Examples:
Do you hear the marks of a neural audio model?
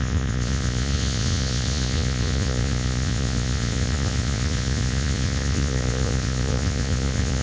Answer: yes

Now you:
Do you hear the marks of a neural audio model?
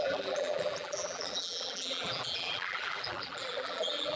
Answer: yes